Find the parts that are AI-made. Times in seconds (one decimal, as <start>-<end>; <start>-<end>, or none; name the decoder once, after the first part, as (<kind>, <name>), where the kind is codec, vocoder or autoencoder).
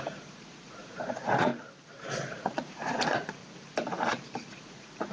0.0-1.5 (vocoder, Vocos); 2.1-3.4; 4.5-5.1